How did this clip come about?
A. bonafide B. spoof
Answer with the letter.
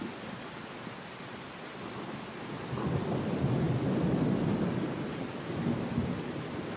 A